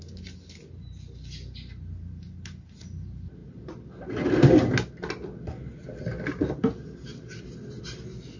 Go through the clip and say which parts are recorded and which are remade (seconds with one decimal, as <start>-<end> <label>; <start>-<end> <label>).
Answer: 0.0-8.4 recorded